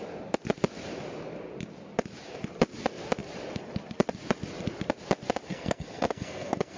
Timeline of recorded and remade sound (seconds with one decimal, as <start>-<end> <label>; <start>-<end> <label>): 0.0-5.5 recorded; 5.5-6.8 remade